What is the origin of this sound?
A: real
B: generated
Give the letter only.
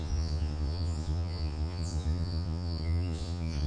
B